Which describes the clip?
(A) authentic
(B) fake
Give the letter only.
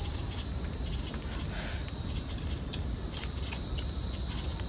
A